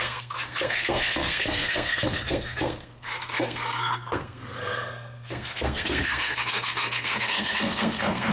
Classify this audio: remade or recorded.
remade